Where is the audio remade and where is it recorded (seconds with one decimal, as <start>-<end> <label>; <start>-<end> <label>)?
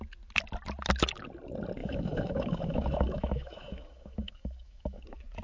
0.0-1.8 recorded; 1.8-5.0 remade; 5.0-5.4 recorded